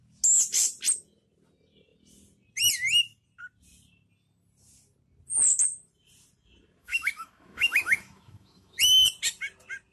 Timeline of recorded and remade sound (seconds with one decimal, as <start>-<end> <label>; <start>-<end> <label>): 0.0-6.8 recorded; 6.8-8.8 remade; 8.8-9.9 recorded